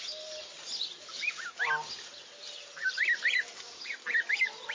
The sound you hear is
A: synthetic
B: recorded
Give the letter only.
B